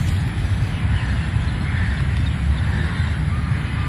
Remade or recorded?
remade